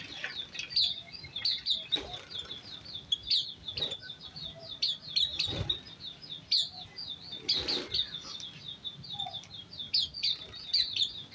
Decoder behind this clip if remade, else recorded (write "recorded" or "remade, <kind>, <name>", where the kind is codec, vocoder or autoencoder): recorded